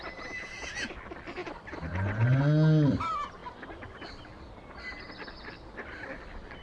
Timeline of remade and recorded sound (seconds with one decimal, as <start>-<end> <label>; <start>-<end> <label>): 0.0-1.4 recorded; 1.4-2.4 remade; 2.4-6.6 recorded